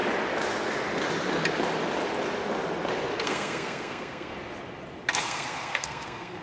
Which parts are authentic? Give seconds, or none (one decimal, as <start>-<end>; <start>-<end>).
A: 0.0-3.2; 4.3-5.2